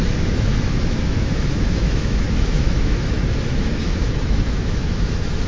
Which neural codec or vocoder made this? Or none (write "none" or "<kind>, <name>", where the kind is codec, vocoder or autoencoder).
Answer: autoencoder, DAC-VAE